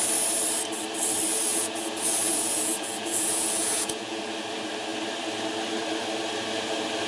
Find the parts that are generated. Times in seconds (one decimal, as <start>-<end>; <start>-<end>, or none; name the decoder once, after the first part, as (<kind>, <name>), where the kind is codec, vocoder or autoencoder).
1.5-4.2 (vocoder, Vocos)

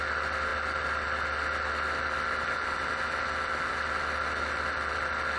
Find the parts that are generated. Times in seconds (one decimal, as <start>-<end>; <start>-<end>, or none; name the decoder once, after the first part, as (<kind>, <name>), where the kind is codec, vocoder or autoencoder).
none